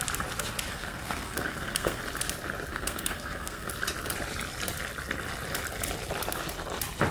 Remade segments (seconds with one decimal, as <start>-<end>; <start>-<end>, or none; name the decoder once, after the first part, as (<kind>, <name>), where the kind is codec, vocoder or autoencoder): 0.7-2.0 (codec, SNAC); 2.7-3.7

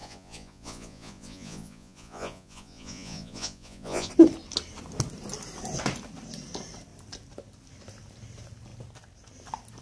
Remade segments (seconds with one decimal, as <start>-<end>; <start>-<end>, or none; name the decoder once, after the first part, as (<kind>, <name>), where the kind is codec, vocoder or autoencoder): 0.0-4.1 (vocoder, Vocos)

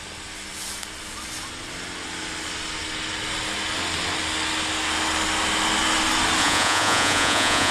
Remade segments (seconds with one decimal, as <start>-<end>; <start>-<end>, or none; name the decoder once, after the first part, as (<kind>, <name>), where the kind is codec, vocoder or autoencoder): 6.4-7.7 (vocoder, Vocos)

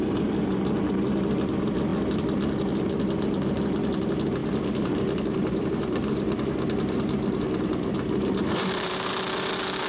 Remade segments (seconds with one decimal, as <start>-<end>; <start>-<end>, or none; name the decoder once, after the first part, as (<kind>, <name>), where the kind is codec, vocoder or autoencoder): 4.4-9.1 (vocoder, BigVGAN v2)